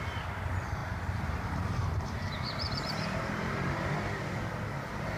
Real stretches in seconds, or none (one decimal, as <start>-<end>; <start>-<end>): 0.0-0.8; 3.9-5.2